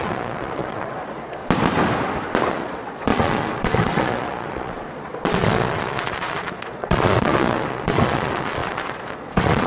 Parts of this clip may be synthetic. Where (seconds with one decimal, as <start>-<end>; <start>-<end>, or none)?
0.0-1.4; 2.5-9.7